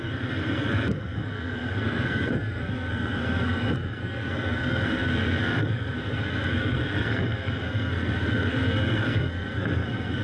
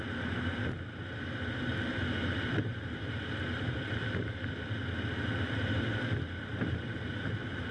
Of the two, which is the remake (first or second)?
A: first